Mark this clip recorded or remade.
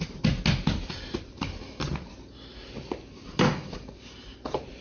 recorded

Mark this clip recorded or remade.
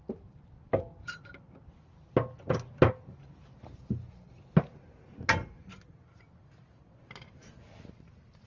recorded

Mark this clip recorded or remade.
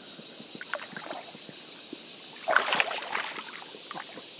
recorded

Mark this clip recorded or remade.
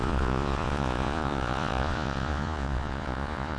remade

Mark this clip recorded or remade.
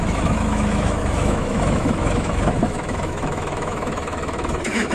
remade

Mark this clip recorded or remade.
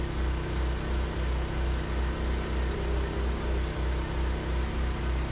recorded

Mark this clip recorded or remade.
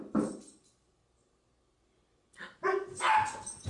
recorded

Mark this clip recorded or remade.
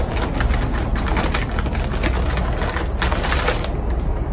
recorded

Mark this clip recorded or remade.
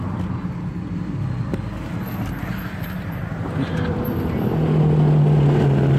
recorded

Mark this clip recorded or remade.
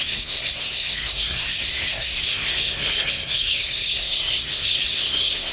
remade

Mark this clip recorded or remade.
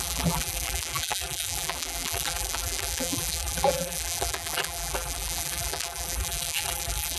remade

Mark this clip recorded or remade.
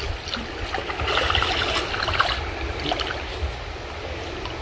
recorded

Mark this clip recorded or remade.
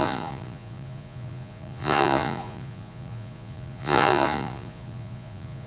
remade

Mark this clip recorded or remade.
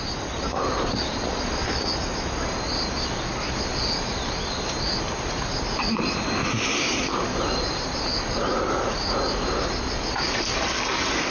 recorded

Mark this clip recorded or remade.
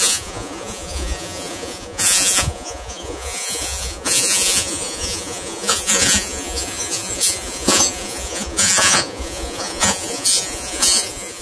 remade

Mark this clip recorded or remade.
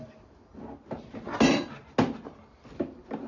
recorded